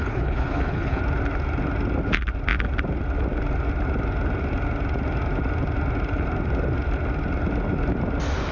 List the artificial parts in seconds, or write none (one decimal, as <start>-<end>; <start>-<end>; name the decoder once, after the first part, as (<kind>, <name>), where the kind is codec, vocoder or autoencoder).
0.0-1.0 (codec, HILCodec)